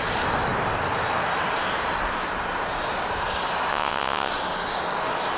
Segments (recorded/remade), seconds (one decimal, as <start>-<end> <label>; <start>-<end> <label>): 0.0-3.7 recorded; 3.7-4.3 remade; 4.3-5.4 recorded